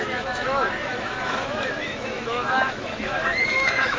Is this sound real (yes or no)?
no